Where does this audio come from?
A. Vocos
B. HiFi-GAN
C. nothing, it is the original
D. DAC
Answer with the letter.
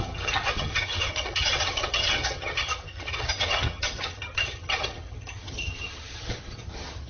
B